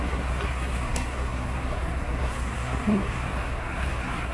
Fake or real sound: fake